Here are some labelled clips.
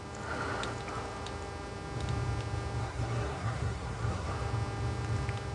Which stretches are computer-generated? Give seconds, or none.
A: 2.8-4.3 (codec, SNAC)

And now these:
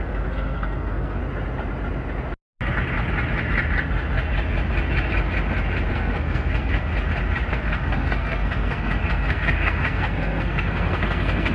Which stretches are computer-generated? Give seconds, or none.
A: 0.0-1.2 (codec, SNAC); 5.9-6.9; 7.5-11.5

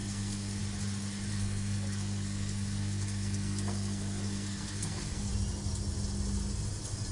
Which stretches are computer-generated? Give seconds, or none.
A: 0.0-0.6 (codec, SNAC); 1.3-5.3